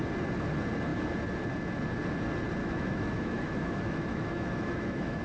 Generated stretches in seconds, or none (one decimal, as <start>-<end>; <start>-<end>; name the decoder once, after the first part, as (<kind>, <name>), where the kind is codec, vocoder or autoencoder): 2.6-5.2 (autoencoder, DAC-VAE)